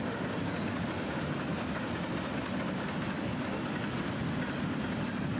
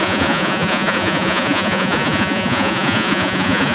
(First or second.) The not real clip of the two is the second